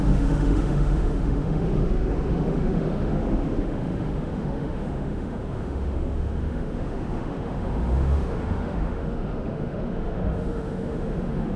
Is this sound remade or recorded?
remade